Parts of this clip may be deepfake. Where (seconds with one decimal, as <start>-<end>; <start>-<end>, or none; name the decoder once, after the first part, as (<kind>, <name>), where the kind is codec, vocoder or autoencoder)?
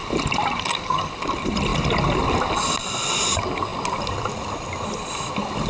none